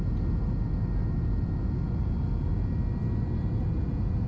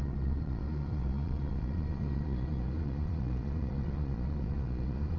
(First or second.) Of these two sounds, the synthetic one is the second